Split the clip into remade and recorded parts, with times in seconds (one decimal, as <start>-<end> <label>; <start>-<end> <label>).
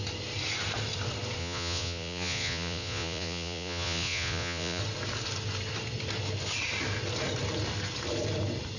0.0-1.4 recorded; 1.4-4.8 remade; 4.8-8.8 recorded